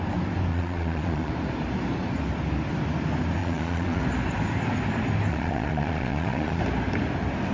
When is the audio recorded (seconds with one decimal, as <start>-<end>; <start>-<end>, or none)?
0.0-0.5; 1.3-3.4; 4.0-5.3; 6.6-7.5